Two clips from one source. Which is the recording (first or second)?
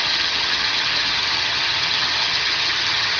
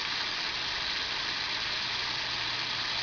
second